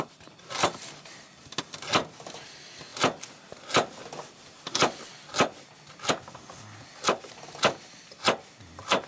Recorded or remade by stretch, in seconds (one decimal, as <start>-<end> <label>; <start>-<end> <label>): 0.0-9.1 recorded